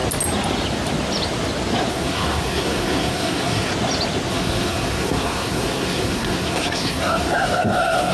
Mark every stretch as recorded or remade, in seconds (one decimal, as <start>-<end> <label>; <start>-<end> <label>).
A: 0.0-1.9 recorded; 1.9-3.7 remade; 3.7-4.3 recorded; 4.3-8.1 remade